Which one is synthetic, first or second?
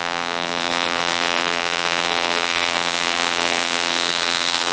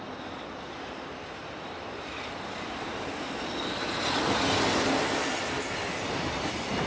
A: first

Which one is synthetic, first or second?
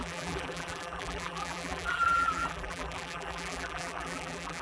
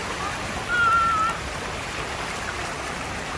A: first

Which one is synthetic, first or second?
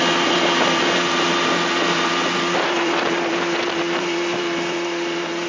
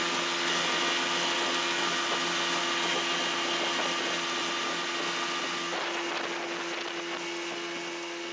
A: first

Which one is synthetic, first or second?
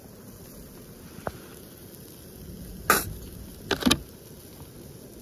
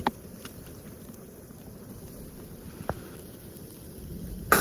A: second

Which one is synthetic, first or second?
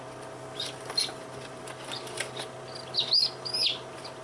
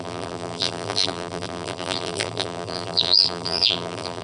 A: second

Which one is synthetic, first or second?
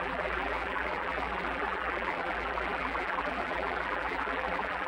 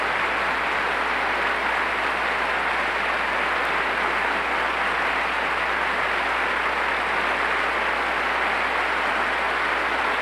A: first